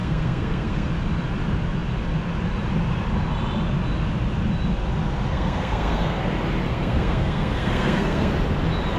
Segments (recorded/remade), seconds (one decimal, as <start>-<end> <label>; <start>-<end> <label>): 0.0-0.9 remade; 0.9-5.3 recorded; 5.3-6.2 remade; 6.2-6.7 recorded; 6.7-8.3 remade; 8.3-9.0 recorded